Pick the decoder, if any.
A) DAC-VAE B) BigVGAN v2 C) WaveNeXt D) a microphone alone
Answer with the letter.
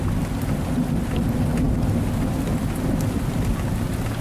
D